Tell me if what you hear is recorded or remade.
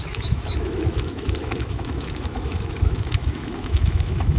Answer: remade